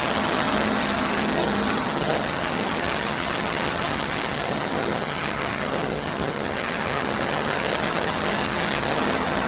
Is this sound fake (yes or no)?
yes